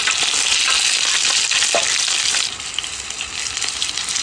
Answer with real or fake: real